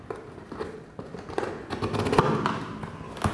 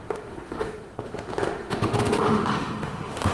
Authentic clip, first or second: first